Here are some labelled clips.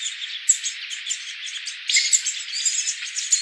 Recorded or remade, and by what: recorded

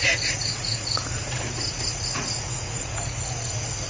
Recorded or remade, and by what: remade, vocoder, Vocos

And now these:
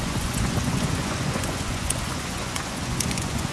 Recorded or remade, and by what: remade, vocoder, Vocos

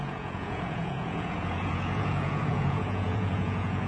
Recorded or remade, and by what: remade, vocoder, Vocos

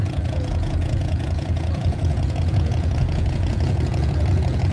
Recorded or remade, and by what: remade, vocoder, Vocos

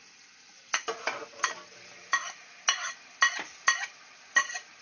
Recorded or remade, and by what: recorded